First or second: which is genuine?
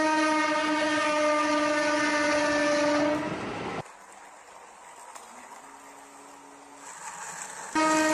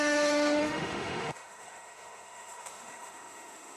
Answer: first